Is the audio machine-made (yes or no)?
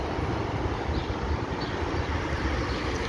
no